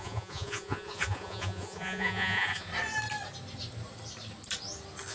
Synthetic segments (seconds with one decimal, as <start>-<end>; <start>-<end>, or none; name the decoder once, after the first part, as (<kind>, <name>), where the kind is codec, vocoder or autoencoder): 0.0-2.7 (vocoder, Vocos)